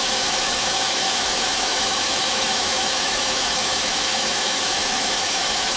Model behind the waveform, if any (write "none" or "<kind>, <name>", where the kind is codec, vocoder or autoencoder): autoencoder, DAC-VAE